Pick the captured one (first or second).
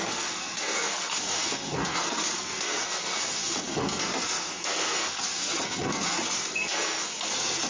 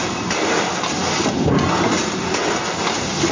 second